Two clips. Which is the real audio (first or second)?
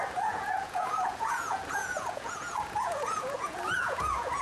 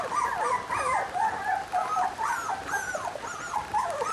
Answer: second